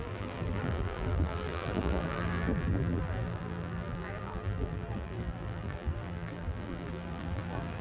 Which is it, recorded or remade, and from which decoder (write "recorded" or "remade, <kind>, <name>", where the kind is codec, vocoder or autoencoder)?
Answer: remade, vocoder, BigVGAN v2